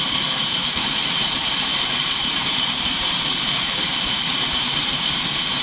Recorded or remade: remade